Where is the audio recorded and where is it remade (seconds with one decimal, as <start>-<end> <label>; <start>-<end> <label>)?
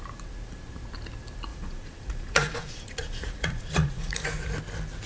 0.0-1.5 recorded; 1.5-4.6 remade; 4.6-5.1 recorded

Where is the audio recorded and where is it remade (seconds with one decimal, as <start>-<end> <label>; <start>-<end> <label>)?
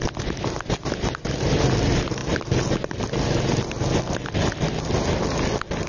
0.0-5.9 recorded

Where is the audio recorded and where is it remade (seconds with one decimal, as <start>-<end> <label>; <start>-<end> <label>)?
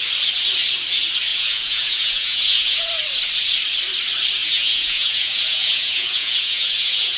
0.0-1.3 recorded; 1.3-2.9 remade; 2.9-4.4 recorded; 4.4-7.2 remade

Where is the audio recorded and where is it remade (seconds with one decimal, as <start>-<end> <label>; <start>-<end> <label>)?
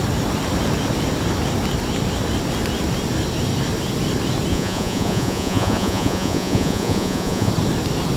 0.0-4.5 recorded; 4.5-7.5 remade; 7.5-8.2 recorded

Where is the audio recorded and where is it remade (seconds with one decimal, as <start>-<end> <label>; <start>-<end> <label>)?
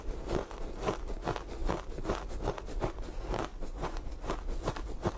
0.0-3.5 recorded; 3.5-4.1 remade; 4.1-5.2 recorded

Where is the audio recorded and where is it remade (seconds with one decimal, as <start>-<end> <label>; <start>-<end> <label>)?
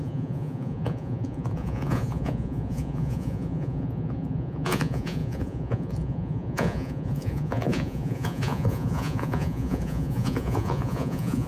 0.0-11.5 remade